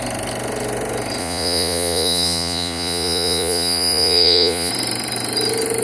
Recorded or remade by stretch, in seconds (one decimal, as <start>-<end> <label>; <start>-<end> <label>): 0.0-1.2 recorded; 1.2-4.7 remade; 4.7-5.8 recorded

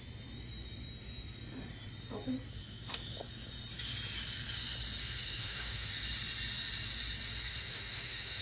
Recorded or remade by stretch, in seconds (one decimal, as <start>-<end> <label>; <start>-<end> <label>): 0.0-2.6 recorded; 2.6-3.2 remade; 3.2-5.0 recorded; 5.0-5.9 remade; 5.9-7.5 recorded; 7.5-8.4 remade

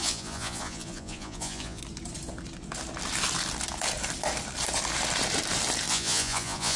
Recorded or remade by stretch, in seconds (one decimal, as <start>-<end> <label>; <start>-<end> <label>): 0.0-1.8 remade; 1.8-5.9 recorded; 5.9-6.8 remade

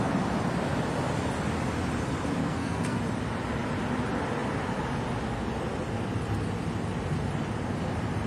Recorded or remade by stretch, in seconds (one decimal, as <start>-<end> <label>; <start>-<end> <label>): 0.0-2.4 recorded; 2.4-3.0 remade; 3.0-8.3 recorded

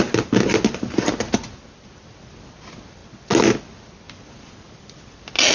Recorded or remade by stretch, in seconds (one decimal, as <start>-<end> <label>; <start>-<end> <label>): 0.0-5.5 recorded

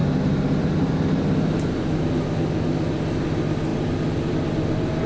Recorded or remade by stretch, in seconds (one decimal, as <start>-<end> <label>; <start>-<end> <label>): 0.0-5.1 recorded

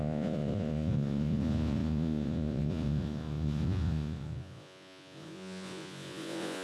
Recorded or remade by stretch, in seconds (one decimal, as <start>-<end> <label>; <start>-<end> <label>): 0.0-6.6 remade